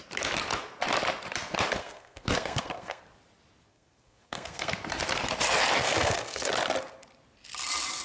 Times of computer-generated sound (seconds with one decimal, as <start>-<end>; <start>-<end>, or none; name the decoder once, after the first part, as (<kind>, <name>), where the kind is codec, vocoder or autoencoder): 1.8-3.0 (codec, SNAC); 3.7-4.7; 5.8-6.5